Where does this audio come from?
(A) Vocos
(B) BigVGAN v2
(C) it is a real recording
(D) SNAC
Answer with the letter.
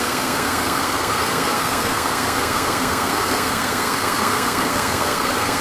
D